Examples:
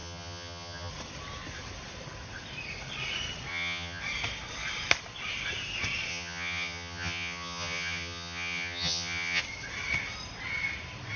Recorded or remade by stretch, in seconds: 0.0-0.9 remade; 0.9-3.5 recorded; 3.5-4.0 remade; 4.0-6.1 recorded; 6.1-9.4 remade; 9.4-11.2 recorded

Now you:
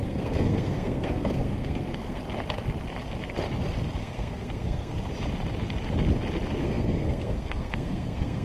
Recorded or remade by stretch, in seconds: 0.0-2.2 remade; 2.2-4.0 recorded; 4.0-4.9 remade; 4.9-6.6 recorded; 6.6-8.4 remade

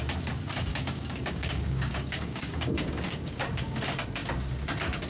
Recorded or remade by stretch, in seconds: 0.0-0.7 recorded; 0.7-3.8 remade; 3.8-5.1 recorded

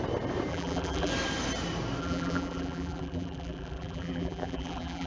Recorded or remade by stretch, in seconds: 0.0-0.5 recorded; 0.5-1.1 remade; 1.1-2.0 recorded; 2.0-5.1 remade

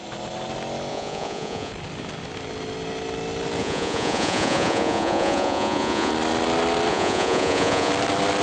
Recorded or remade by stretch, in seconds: 0.0-0.9 recorded; 0.9-1.7 remade; 1.7-3.6 recorded; 3.6-6.1 remade; 6.1-6.9 recorded; 6.9-7.9 remade; 7.9-8.4 recorded

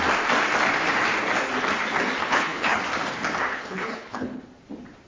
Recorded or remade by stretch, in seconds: 0.0-2.2 recorded; 2.2-2.8 remade; 2.8-3.5 recorded; 3.5-4.4 remade; 4.4-5.1 recorded

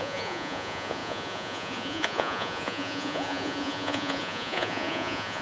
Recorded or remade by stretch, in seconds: 0.0-5.4 remade

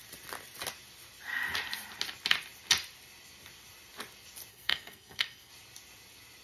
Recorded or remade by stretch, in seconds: 0.0-4.5 recorded; 4.5-5.5 remade; 5.5-6.4 recorded